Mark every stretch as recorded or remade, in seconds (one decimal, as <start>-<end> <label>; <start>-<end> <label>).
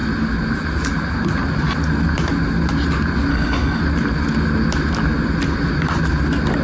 0.0-3.3 recorded; 3.3-3.8 remade; 3.8-6.6 recorded